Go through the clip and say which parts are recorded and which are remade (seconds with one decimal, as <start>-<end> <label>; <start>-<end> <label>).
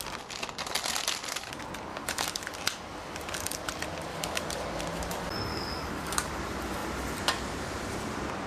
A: 0.0-1.9 recorded; 1.9-2.4 remade; 2.4-4.1 recorded; 4.1-4.8 remade; 4.8-5.5 recorded; 5.5-6.3 remade; 6.3-8.5 recorded